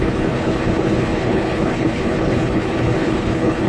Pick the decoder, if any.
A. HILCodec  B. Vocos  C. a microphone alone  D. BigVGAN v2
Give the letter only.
A